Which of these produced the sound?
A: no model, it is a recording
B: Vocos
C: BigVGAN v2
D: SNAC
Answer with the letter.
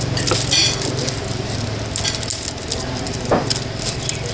A